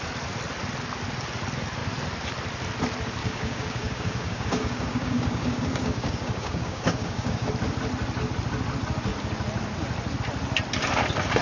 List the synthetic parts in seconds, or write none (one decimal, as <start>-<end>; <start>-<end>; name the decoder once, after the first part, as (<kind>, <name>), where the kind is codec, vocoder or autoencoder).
3.2-7.5 (codec, DAC)